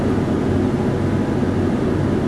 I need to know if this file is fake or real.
real